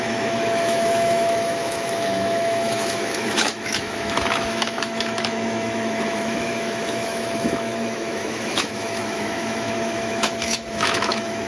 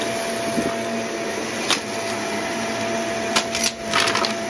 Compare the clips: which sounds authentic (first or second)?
second